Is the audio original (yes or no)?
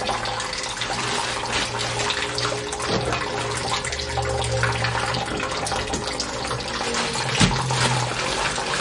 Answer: yes